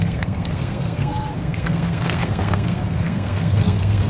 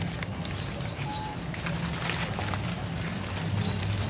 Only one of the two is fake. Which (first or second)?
first